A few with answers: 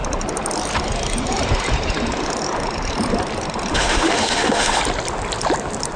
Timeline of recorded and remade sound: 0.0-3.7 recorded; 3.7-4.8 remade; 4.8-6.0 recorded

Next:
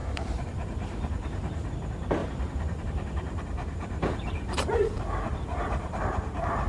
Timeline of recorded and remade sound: 0.0-1.7 remade; 1.7-2.2 recorded; 2.2-6.0 remade; 6.0-6.7 recorded

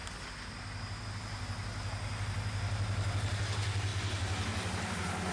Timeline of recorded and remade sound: 0.0-5.3 recorded